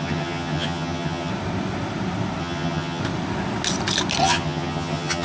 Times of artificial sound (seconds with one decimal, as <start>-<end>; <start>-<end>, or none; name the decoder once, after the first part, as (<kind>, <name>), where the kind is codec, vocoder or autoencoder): 0.0-1.3 (vocoder, HiFi-GAN); 2.4-3.0; 4.2-5.2